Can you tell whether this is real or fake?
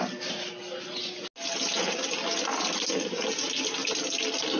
real